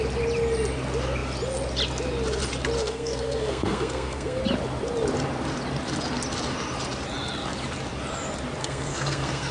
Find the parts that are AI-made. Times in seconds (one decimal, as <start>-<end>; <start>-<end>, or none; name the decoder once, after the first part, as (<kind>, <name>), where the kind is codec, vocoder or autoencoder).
2.8-4.4 (codec, SNAC); 8.6-9.5